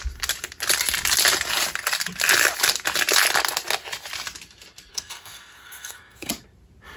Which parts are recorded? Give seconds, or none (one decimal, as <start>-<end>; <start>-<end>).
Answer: 0.0-4.9; 6.3-7.0